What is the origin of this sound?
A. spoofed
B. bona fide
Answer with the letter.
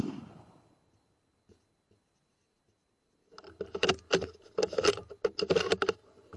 B